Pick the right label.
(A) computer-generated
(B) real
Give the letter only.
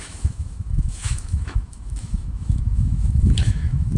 A